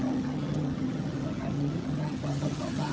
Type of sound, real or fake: fake